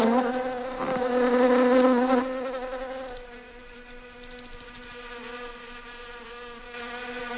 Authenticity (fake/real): real